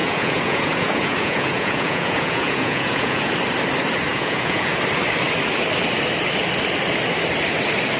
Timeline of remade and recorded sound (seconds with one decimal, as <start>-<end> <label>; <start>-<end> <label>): 0.0-3.3 remade; 3.3-4.1 recorded; 4.1-4.8 remade; 4.8-8.0 recorded